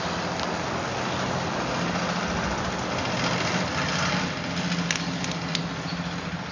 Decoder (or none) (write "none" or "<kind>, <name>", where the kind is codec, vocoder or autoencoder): none